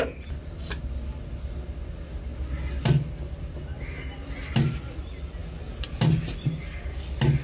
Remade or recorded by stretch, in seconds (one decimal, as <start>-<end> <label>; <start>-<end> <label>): 0.0-7.4 recorded